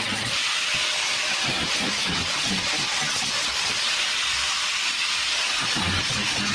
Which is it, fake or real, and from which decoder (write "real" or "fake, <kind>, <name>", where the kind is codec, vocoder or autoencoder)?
real